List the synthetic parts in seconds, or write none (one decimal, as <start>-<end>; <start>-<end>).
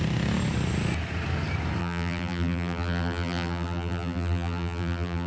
1.8-5.3